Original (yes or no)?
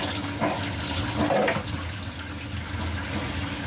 yes